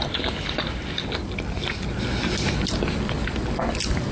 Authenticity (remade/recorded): recorded